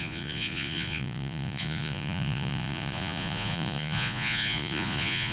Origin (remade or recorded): remade